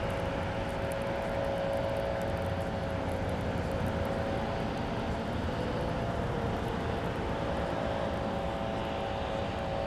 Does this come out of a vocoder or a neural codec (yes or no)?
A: no